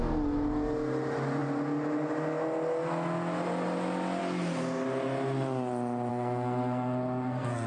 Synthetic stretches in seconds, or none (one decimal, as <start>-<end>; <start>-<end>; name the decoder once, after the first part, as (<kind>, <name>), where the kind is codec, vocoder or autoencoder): 6.1-7.7 (codec, SNAC)